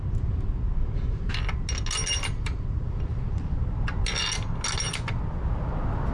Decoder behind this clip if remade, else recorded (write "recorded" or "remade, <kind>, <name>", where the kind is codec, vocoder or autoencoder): recorded